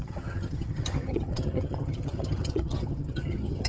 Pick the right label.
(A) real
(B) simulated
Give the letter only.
B